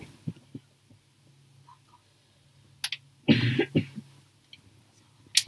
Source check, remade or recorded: recorded